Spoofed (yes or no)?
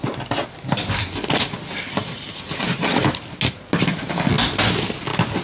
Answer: no